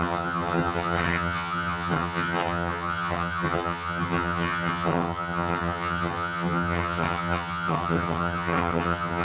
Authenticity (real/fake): fake